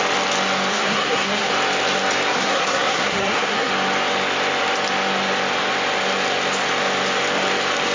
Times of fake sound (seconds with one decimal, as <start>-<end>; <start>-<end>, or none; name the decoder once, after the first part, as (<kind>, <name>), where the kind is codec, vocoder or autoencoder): 0.7-1.5 (codec, SNAC); 2.3-3.7